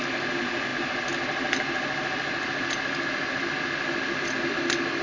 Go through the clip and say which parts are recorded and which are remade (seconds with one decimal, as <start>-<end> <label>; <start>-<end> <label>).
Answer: 0.0-5.0 recorded